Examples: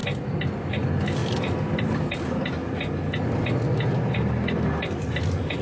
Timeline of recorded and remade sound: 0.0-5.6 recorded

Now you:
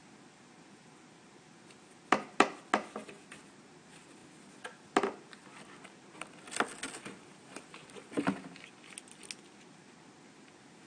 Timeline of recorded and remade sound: 0.0-10.9 recorded